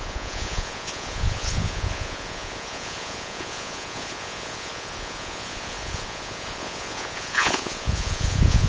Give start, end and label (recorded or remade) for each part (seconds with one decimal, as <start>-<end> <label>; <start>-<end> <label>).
0.0-8.7 remade